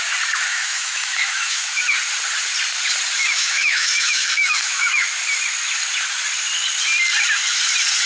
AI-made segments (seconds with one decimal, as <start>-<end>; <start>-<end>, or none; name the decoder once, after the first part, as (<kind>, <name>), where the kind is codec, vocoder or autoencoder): 0.5-1.8 (autoencoder, DAC-VAE); 3.2-5.0